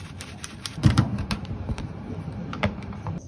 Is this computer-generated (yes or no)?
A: yes